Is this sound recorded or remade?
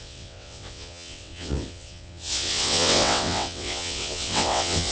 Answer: remade